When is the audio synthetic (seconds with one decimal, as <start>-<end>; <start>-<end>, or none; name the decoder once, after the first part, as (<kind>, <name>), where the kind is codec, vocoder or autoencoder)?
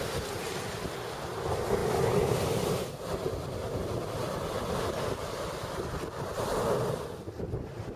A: 1.8-6.2 (vocoder, BigVGAN v2)